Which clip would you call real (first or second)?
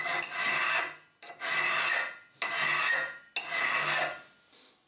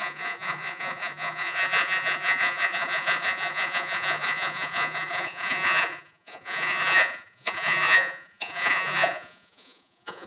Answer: first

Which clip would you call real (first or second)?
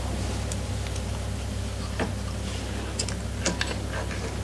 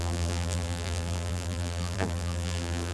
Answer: first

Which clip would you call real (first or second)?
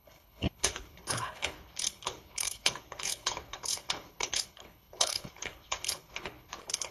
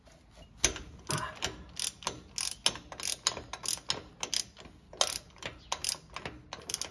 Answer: second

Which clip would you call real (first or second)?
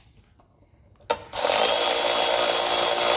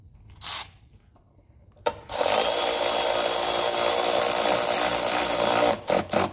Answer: first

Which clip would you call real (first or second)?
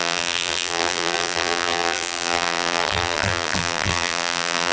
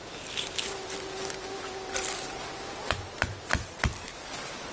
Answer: second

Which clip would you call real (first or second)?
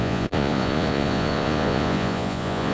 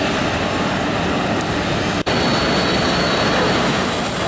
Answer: second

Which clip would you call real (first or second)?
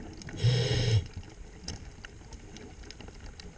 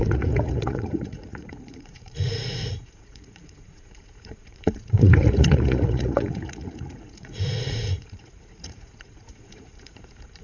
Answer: first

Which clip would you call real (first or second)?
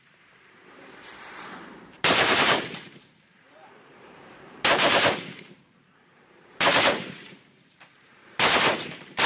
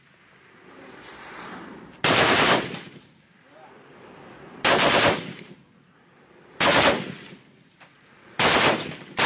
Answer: second